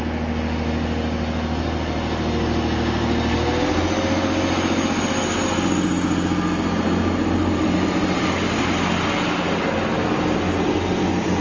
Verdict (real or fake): real